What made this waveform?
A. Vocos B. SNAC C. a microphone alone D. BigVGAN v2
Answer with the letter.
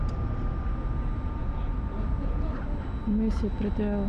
C